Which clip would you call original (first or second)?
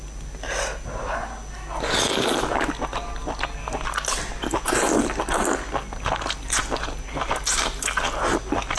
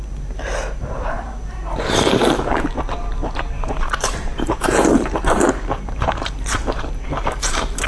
first